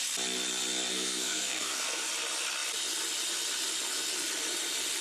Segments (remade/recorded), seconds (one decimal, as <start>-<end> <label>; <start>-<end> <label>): 0.0-0.9 recorded; 0.9-2.1 remade; 2.1-5.0 recorded